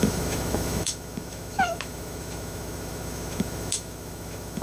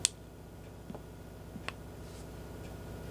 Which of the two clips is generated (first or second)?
first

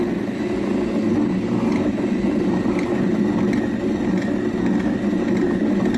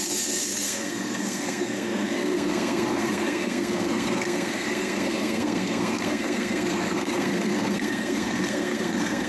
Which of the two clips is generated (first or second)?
second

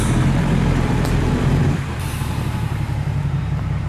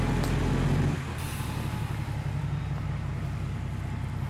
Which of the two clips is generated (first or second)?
first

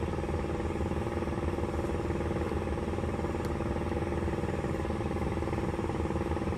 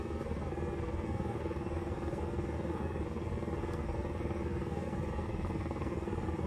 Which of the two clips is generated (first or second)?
second